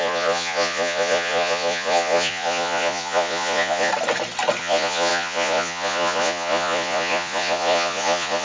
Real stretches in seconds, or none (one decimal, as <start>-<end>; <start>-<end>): 3.9-4.6